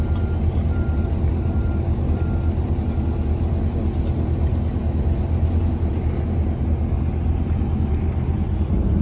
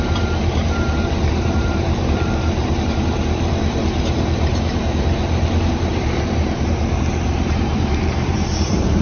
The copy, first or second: second